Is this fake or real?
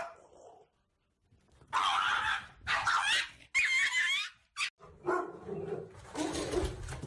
real